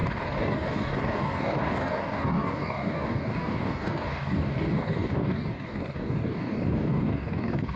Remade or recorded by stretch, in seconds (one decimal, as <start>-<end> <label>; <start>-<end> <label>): 0.0-7.8 remade